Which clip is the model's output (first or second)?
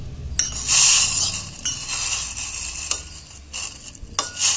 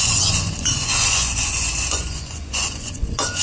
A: second